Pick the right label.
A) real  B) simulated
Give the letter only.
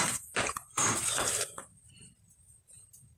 B